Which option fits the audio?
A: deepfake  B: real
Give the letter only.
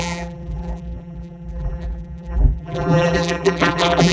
A